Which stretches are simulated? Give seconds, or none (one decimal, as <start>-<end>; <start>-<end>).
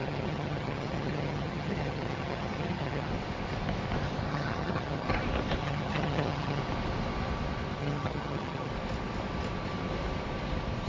0.0-3.1; 4.3-5.1; 5.6-6.6; 7.8-8.7